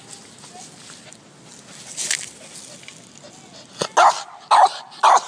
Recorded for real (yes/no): yes